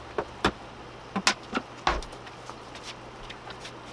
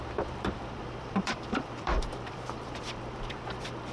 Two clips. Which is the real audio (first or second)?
first